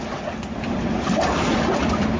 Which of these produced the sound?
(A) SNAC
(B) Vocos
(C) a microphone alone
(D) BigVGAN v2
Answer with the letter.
C